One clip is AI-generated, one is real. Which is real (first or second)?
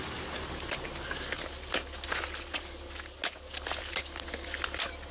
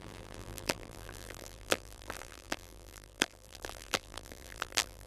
first